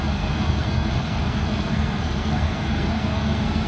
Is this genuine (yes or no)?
no